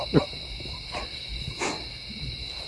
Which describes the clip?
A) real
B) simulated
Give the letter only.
A